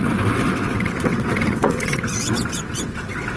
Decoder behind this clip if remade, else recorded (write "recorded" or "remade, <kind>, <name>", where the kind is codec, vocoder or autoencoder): remade, vocoder, WaveNeXt